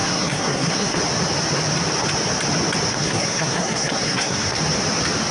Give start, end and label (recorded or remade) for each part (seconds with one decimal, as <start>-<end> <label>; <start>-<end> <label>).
0.0-1.0 remade; 1.0-2.9 recorded; 2.9-4.6 remade; 4.6-5.3 recorded